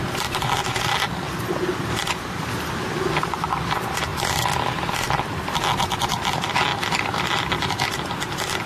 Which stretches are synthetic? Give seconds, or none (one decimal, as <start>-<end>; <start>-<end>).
none